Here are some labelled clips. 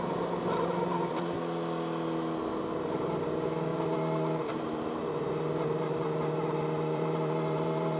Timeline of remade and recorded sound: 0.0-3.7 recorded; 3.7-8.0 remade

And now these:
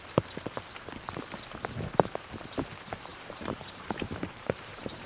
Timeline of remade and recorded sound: 0.0-3.1 recorded; 3.1-5.1 remade

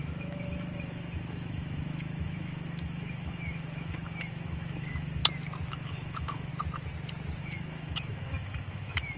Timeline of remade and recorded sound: 0.0-5.2 remade; 5.2-5.7 recorded; 5.7-6.5 remade; 6.5-7.4 recorded; 7.4-9.2 remade

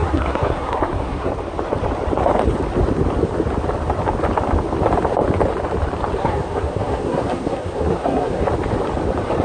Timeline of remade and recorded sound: 0.0-1.3 remade; 1.3-6.2 recorded; 6.2-8.4 remade; 8.4-9.4 recorded